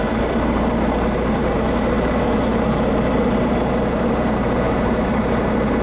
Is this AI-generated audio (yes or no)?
yes